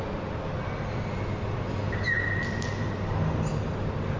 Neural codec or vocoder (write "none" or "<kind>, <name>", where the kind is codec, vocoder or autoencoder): none